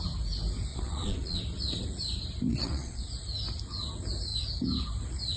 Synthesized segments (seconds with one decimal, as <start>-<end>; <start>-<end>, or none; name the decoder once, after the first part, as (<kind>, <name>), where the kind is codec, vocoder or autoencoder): 0.7-1.4 (vocoder, WaveNeXt); 2.5-3.1